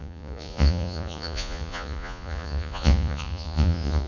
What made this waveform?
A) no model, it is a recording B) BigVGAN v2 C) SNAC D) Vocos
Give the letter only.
D